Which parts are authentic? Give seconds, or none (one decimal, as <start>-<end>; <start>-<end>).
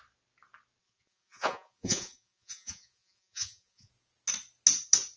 0.0-0.8; 3.9-5.2